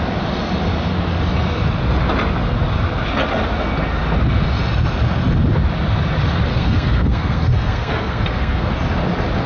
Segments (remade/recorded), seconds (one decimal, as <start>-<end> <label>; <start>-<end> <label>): 0.0-6.5 recorded; 6.5-8.7 remade; 8.7-9.5 recorded